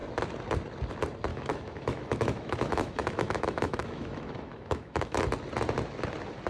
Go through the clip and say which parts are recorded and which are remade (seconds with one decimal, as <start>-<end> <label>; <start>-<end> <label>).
0.0-1.3 recorded; 1.3-5.2 remade; 5.2-6.5 recorded